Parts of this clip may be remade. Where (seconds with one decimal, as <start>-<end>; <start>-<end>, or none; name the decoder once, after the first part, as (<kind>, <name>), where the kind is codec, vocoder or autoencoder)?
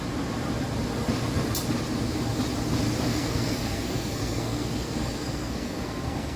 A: 3.1-6.4 (codec, SNAC)